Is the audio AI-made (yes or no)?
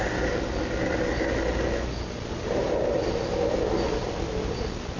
no